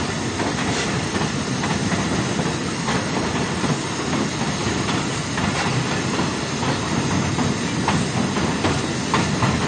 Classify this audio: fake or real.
real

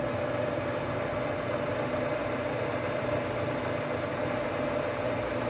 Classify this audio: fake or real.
real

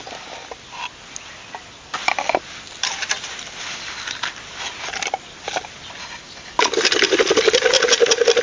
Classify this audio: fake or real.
real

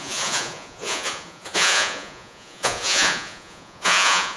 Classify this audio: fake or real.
fake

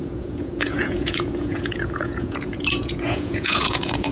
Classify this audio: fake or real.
fake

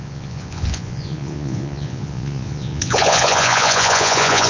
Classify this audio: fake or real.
fake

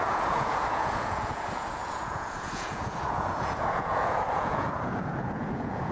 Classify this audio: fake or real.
fake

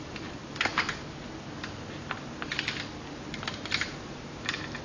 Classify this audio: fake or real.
real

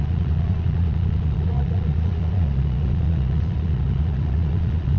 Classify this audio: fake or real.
fake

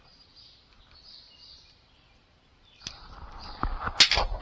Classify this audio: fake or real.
real